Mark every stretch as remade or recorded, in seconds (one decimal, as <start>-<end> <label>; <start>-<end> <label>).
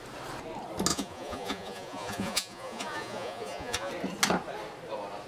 0.0-0.9 recorded; 0.9-3.9 remade; 3.9-5.3 recorded